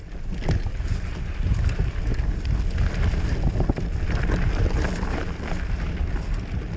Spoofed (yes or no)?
no